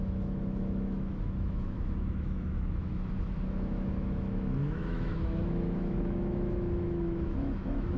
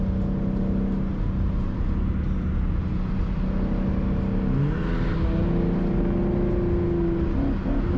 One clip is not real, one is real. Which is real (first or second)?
second